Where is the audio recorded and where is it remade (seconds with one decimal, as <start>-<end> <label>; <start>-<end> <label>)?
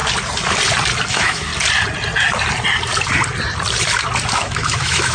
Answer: 0.0-1.1 recorded; 1.1-1.5 remade; 1.5-4.3 recorded; 4.3-5.1 remade